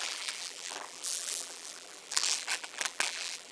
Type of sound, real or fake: fake